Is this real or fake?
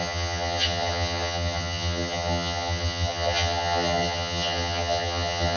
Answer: fake